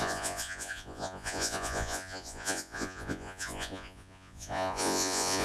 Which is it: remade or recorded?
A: remade